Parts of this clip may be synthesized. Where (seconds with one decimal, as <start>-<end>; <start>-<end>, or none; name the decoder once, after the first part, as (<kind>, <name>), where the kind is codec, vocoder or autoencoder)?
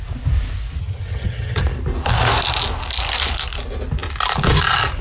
0.8-1.6 (vocoder, HiFi-GAN)